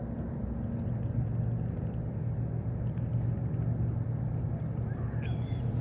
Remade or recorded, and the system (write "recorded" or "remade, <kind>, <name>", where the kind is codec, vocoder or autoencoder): recorded